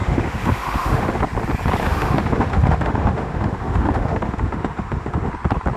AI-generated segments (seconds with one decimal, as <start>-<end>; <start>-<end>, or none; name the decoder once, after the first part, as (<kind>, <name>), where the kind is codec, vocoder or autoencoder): 0.0-1.2 (autoencoder, DAC-VAE); 1.8-5.3